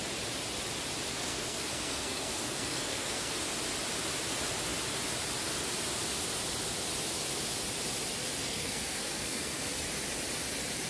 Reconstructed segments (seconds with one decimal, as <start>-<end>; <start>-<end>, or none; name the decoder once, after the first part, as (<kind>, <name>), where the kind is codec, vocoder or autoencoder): 1.1-3.4 (codec, SNAC); 8.4-9.8